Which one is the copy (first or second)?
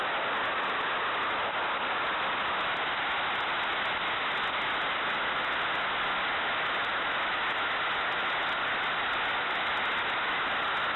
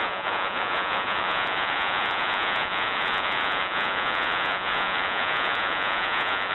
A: second